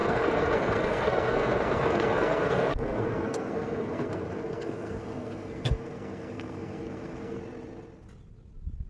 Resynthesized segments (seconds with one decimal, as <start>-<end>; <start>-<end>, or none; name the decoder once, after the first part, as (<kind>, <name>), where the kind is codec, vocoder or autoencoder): 0.0-7.4 (codec, SNAC)